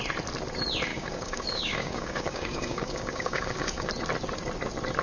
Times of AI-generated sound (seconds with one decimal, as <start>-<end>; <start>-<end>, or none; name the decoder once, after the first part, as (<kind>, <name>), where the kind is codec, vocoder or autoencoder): 0.9-3.9 (codec, DAC)